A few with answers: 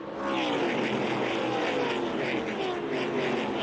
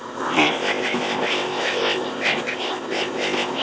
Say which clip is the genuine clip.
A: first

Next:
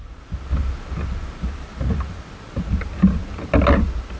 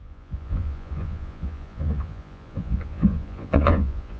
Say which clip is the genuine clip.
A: first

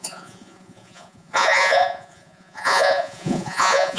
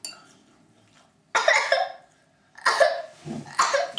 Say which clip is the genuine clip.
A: second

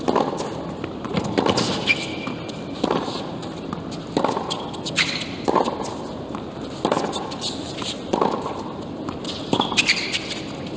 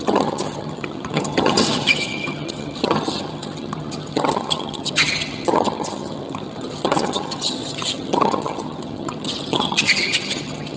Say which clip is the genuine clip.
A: first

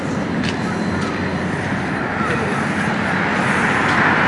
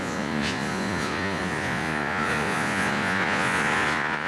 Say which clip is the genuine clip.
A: first